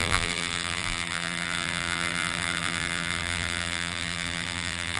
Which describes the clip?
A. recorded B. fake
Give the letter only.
B